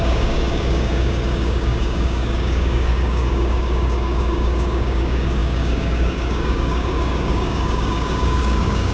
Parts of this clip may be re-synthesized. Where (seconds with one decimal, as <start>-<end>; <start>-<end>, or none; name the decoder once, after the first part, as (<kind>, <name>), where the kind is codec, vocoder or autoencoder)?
0.0-8.9 (codec, DAC)